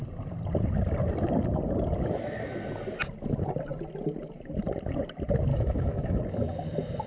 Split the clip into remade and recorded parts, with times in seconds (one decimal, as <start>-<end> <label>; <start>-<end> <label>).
0.0-5.5 recorded; 5.5-6.2 remade; 6.2-7.1 recorded

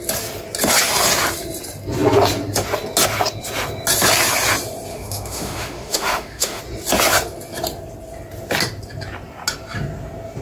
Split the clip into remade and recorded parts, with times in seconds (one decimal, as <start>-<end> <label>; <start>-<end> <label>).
0.0-4.9 recorded; 4.9-6.6 remade; 6.6-10.4 recorded

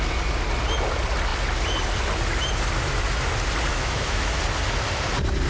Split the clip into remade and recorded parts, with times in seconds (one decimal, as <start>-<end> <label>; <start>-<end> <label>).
0.0-3.7 recorded; 3.7-4.4 remade; 4.4-5.5 recorded

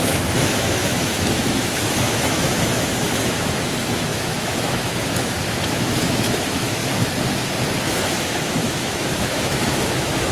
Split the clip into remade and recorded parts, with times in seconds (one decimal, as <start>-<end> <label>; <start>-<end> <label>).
0.0-6.8 remade; 6.8-7.8 recorded; 7.8-10.3 remade

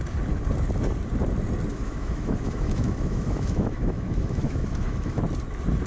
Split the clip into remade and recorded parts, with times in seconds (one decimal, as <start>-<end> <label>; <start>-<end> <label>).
0.0-1.7 recorded; 1.7-5.2 remade; 5.2-5.9 recorded

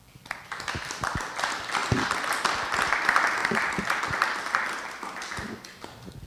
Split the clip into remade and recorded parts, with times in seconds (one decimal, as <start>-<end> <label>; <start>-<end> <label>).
0.0-6.3 recorded

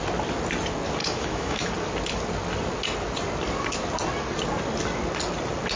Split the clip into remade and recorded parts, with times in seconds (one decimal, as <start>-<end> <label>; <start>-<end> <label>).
0.0-1.0 recorded; 1.0-1.7 remade; 1.7-5.8 recorded

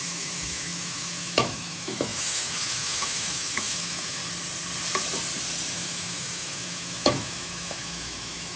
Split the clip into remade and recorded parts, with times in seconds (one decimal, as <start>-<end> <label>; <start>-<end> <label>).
0.0-4.2 remade; 4.2-5.7 recorded; 5.7-8.6 remade